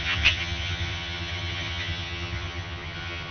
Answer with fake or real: fake